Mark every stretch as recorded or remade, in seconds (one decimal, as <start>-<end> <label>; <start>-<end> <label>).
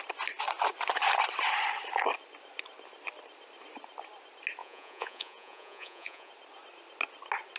0.0-4.6 recorded; 4.6-6.3 remade; 6.3-7.6 recorded